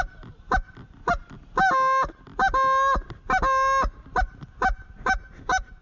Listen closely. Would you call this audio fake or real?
real